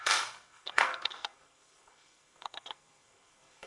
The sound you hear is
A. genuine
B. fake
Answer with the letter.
B